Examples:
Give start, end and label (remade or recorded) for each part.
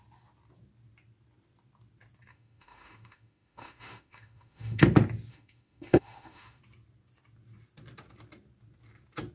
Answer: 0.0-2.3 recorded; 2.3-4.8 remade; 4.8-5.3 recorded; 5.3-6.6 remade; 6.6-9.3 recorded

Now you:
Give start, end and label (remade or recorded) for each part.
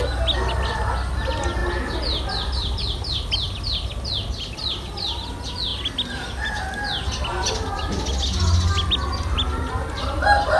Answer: 0.0-10.6 recorded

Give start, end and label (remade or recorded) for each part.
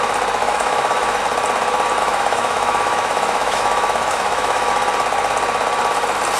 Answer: 0.0-0.4 recorded; 0.4-1.2 remade; 1.2-2.0 recorded; 2.0-4.7 remade; 4.7-6.4 recorded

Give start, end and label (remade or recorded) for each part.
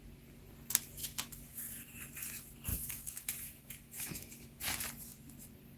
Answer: 0.0-1.0 recorded; 1.0-1.6 remade; 1.6-2.7 recorded; 2.7-4.6 remade; 4.6-5.8 recorded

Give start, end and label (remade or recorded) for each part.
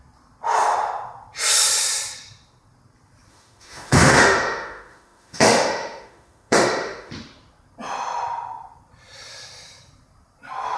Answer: 0.0-3.3 recorded; 3.3-7.1 remade; 7.1-10.8 recorded